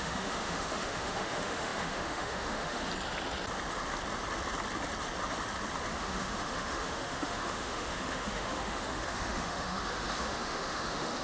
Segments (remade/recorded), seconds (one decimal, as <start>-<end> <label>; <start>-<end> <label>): 0.0-2.9 remade; 2.9-5.9 recorded; 5.9-11.2 remade